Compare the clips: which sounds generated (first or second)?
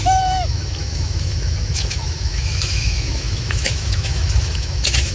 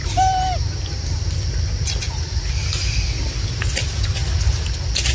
first